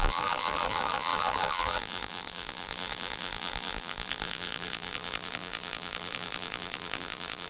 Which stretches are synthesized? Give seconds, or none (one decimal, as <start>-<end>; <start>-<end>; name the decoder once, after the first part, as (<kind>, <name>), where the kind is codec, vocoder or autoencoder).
0.0-7.5 (vocoder, BigVGAN v2)